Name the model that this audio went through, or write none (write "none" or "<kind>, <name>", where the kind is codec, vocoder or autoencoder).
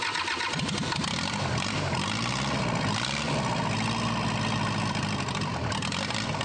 none